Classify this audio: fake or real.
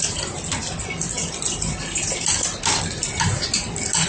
real